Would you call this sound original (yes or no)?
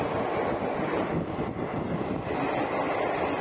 yes